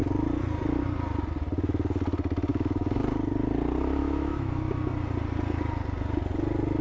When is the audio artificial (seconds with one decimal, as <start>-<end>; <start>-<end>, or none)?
2.5-3.0; 4.0-4.5